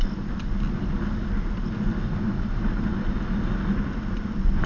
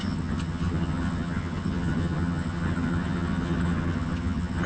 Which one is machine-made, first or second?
second